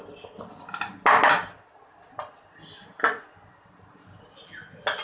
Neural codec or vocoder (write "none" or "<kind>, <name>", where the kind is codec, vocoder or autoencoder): none